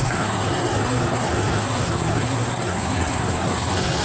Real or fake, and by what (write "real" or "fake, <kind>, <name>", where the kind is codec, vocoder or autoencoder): fake, codec, SNAC